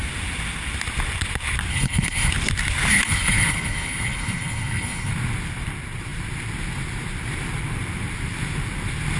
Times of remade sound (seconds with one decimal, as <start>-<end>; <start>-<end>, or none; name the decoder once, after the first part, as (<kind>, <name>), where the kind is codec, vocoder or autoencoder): 1.7-2.3 (codec, HILCodec); 2.9-5.1